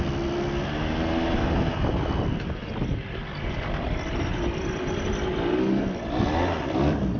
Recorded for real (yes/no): yes